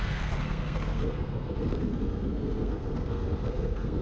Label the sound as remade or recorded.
remade